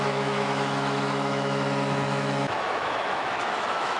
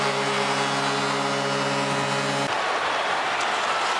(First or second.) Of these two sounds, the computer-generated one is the first